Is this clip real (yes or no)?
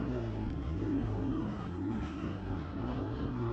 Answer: no